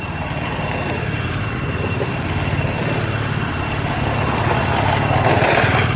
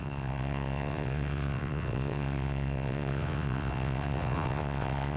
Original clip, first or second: first